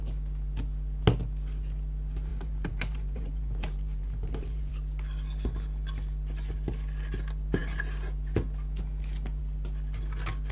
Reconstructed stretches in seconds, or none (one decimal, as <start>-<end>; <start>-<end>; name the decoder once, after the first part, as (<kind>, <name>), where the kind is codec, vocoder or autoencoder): 2.3-4.7 (vocoder, BigVGAN v2)